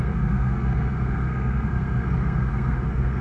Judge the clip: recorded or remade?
remade